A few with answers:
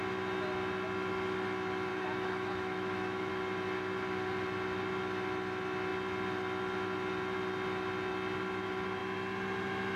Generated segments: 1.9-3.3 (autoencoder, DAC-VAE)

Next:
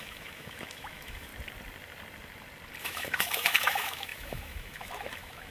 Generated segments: 0.0-1.3 (autoencoder, DAC-VAE); 2.8-5.5

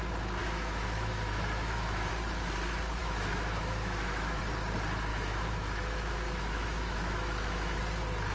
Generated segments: 0.4-2.1 (autoencoder, DAC-VAE); 3.0-4.4; 5.1-7.8

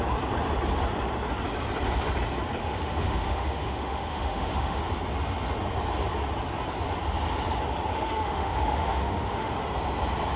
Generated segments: 2.6-4.8 (autoencoder, DAC-VAE); 7.9-9.5

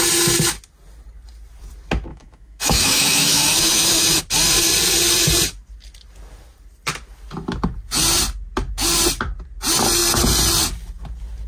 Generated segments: 2.1-4.2 (autoencoder, DAC-VAE)

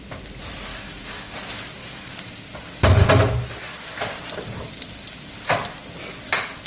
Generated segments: 0.7-1.3 (autoencoder, DAC-VAE); 1.8-2.3